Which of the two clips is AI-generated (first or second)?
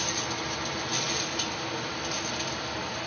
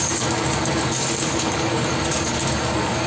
second